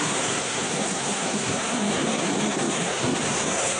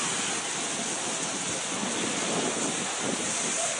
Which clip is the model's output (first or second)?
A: first